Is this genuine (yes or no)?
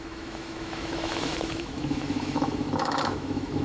no